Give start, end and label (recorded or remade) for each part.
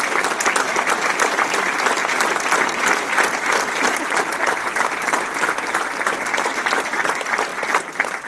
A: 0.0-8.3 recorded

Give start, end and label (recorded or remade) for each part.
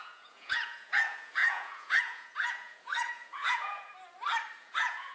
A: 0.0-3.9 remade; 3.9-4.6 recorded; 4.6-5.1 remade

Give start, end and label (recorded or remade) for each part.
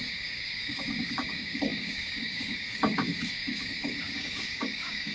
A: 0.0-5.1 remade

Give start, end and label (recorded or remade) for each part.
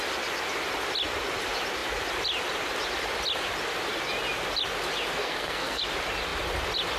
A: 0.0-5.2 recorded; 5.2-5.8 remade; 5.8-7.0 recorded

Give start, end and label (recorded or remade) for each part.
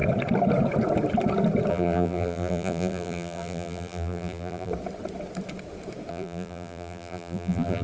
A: 0.0-1.7 recorded; 1.7-4.7 remade; 4.7-6.1 recorded; 6.1-7.8 remade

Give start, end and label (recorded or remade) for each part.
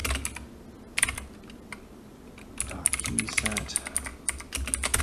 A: 0.0-5.0 recorded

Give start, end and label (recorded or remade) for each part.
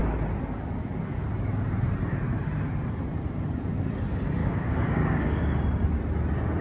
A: 0.0-4.4 recorded; 4.4-5.6 remade; 5.6-6.6 recorded